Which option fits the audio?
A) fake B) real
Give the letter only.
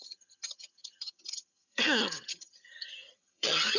A